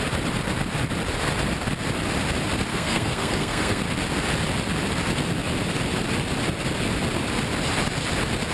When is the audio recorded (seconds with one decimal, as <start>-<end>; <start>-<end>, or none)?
0.0-2.7; 3.8-8.5